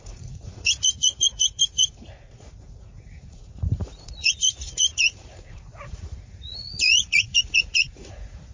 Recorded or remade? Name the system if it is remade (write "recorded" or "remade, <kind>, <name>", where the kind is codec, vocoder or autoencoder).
remade, vocoder, Vocos